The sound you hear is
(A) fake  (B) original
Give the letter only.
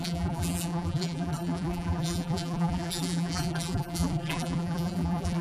A